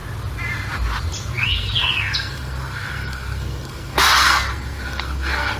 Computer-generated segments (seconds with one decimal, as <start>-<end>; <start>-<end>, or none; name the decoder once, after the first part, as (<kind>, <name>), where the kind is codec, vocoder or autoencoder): 1.3-5.6 (codec, SNAC)